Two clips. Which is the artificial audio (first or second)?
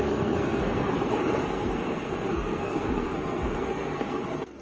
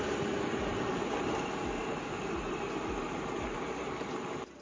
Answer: first